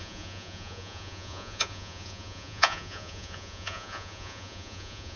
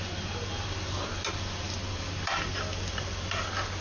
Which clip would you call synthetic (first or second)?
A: first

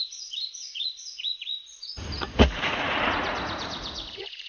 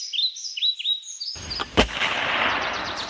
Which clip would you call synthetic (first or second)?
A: first